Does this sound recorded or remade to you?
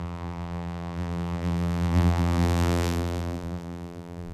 remade